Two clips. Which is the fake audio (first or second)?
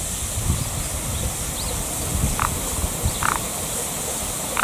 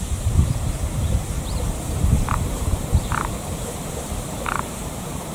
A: second